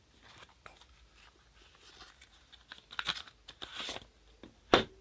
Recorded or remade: recorded